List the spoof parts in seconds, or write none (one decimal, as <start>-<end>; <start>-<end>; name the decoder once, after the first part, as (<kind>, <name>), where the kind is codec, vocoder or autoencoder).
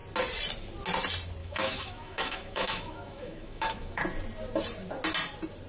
1.4-4.0 (autoencoder, DAC-VAE)